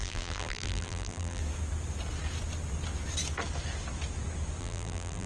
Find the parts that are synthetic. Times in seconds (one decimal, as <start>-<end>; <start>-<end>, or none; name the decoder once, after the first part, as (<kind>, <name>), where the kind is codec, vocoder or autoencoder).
0.0-1.4 (vocoder, BigVGAN v2); 4.6-5.3

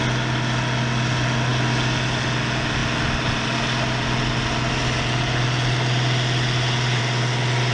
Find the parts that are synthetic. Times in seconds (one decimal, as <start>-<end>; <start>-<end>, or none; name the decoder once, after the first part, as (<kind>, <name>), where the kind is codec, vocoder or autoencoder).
none

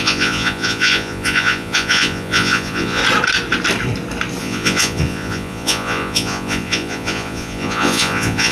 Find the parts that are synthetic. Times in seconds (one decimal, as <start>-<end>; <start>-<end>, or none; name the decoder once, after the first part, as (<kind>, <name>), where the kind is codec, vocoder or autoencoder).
0.0-3.0 (vocoder, Vocos); 4.4-8.5

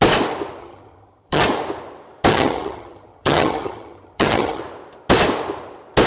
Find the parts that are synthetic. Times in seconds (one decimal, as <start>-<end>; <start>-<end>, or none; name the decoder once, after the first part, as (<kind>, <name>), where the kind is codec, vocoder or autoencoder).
0.6-1.4 (vocoder, HiFi-GAN); 2.3-4.6

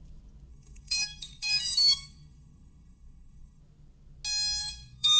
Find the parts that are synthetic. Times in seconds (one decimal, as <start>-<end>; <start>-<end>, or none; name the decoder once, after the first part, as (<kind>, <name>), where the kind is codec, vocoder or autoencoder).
0.5-3.6 (codec, DAC); 4.6-5.2